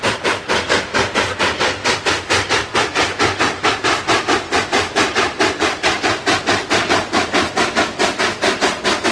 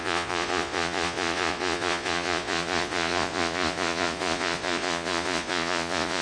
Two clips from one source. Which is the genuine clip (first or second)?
first